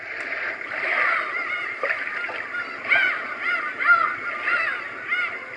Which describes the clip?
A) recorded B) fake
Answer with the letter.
B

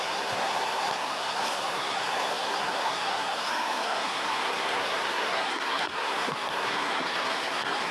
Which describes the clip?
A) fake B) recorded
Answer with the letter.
A